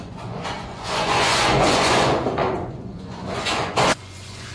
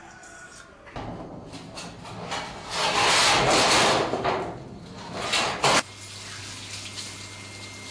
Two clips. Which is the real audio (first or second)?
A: second